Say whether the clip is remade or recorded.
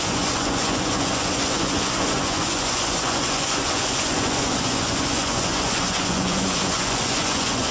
remade